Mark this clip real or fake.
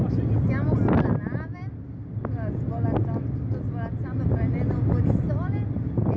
real